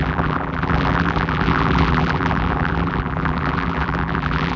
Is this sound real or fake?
fake